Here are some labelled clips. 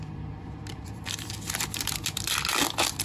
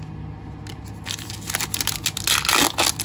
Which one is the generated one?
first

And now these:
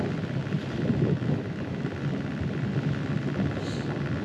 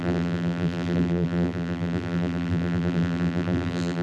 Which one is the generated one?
second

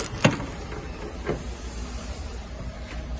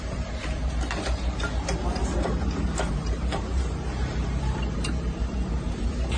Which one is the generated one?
second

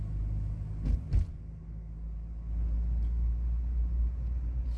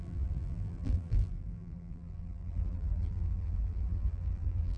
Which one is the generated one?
second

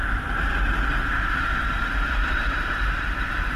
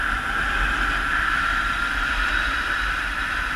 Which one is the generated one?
first